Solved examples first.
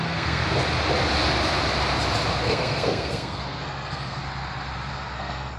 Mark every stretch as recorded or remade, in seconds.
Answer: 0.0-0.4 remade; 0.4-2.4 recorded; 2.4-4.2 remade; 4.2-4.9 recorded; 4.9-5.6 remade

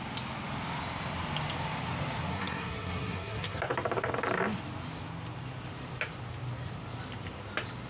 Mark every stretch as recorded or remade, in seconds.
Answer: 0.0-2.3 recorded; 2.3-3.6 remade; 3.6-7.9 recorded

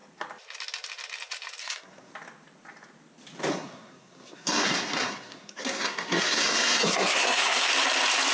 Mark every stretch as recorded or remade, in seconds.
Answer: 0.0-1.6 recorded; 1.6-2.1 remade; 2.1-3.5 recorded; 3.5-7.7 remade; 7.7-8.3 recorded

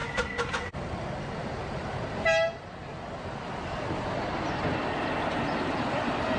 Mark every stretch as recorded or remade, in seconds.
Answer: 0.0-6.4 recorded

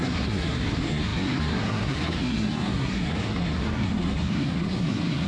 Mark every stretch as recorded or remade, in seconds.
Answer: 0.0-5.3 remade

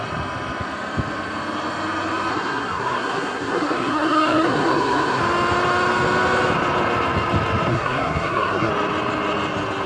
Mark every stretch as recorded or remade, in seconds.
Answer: 0.0-2.3 recorded; 2.3-5.2 remade; 5.2-7.7 recorded; 7.7-8.7 remade; 8.7-9.9 recorded